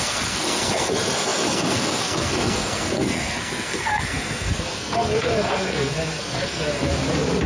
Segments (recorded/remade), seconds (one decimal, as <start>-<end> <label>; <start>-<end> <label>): 0.0-6.9 remade; 6.9-7.5 recorded